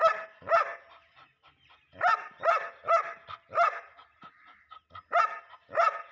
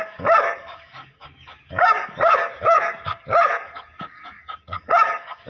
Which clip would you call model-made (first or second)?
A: second